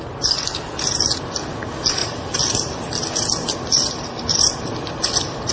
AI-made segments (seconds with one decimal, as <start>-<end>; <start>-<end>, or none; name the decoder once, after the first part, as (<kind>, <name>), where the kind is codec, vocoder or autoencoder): 2.0-5.5 (vocoder, BigVGAN v2)